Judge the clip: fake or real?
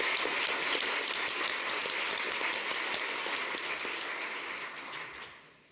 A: real